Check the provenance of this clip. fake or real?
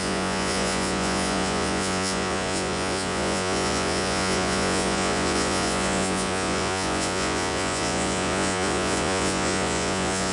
fake